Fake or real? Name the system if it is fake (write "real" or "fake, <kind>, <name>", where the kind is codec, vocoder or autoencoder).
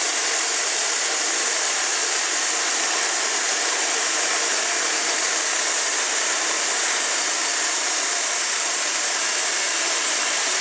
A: fake, vocoder, BigVGAN v2